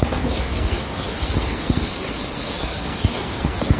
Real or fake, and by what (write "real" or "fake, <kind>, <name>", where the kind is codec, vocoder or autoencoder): fake, codec, SNAC